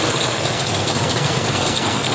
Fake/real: fake